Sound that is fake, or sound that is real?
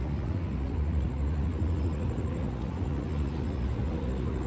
fake